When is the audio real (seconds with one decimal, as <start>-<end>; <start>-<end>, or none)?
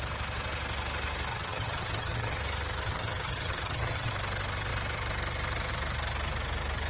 0.0-1.3; 2.4-2.8; 4.1-6.9